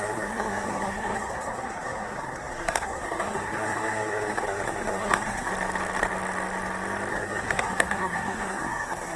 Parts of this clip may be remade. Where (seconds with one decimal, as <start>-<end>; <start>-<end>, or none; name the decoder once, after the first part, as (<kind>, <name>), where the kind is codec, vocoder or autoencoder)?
0.0-5.5 (codec, SNAC); 7.1-9.2